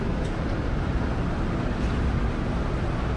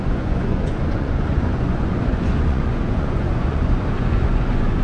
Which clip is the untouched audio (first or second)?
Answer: first